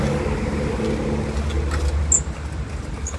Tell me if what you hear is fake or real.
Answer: real